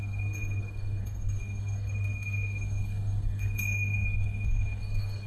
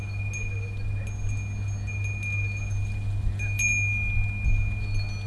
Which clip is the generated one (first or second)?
first